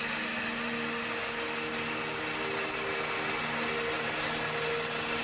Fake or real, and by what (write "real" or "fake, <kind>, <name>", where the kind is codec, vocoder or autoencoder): real